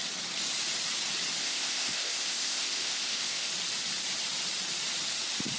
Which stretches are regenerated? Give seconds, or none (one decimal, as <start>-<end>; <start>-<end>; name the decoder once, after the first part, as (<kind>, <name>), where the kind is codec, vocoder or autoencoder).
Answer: 1.4-3.5 (codec, ZipCodec)